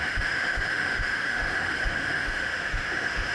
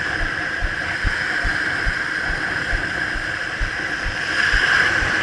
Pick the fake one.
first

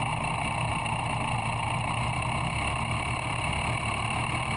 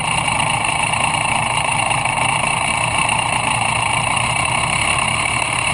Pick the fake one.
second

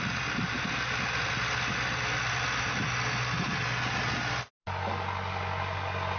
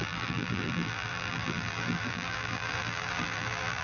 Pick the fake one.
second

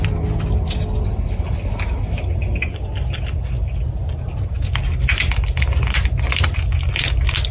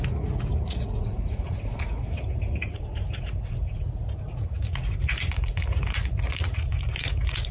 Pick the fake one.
second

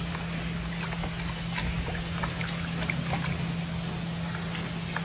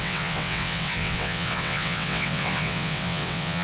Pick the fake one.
second